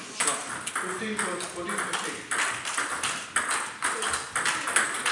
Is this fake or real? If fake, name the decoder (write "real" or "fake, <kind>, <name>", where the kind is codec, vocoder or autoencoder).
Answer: real